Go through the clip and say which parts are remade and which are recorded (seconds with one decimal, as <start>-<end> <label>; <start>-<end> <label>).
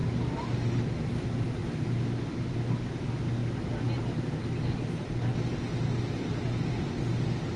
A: 0.0-7.6 recorded